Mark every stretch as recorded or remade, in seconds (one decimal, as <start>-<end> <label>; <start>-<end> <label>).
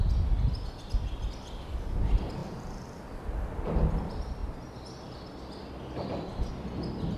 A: 0.0-7.2 recorded